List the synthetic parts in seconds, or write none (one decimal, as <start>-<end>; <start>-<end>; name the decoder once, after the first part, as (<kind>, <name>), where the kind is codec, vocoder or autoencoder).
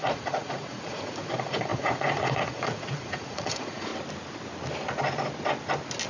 0.0-3.9 (vocoder, Vocos)